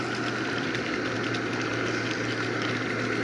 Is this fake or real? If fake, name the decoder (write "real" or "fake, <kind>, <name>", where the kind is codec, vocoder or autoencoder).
real